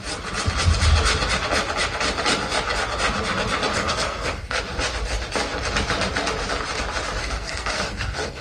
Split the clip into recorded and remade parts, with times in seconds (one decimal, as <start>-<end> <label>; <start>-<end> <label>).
0.0-3.7 recorded; 3.7-4.6 remade; 4.6-7.2 recorded; 7.2-8.4 remade

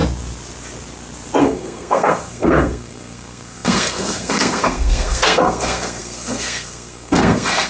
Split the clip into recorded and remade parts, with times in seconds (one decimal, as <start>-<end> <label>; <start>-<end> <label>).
0.0-1.4 recorded; 1.4-7.7 remade

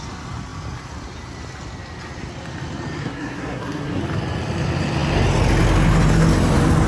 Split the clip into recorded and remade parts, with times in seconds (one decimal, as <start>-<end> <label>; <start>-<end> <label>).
0.0-3.0 recorded; 3.0-4.0 remade; 4.0-6.9 recorded

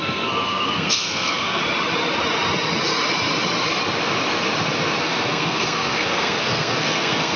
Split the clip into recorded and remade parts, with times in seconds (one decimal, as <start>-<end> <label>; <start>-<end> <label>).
0.0-1.6 remade; 1.6-5.0 recorded; 5.0-7.4 remade

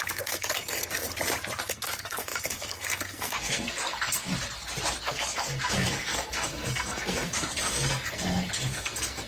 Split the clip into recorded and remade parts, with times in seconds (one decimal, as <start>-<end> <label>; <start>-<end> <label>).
0.0-1.1 remade; 1.1-1.6 recorded; 1.6-4.3 remade; 4.3-5.0 recorded; 5.0-9.3 remade

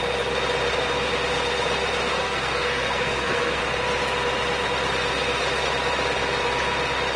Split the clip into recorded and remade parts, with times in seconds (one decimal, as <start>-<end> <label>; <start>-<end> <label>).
0.0-2.1 recorded; 2.1-3.6 remade; 3.6-7.2 recorded